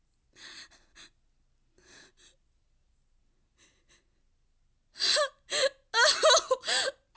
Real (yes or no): yes